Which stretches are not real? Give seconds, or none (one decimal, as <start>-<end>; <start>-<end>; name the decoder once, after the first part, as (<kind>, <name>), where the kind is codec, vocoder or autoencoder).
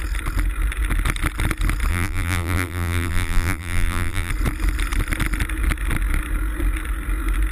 1.9-4.3 (vocoder, BigVGAN v2)